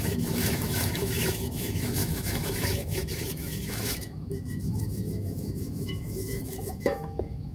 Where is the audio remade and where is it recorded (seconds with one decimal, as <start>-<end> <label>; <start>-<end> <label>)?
0.0-7.5 remade